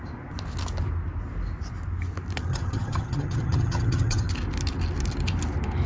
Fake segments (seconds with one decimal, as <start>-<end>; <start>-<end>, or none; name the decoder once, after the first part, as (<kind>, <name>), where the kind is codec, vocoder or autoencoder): 2.5-4.3 (vocoder, HiFi-GAN)